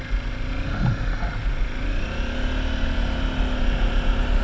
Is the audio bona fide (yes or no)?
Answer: yes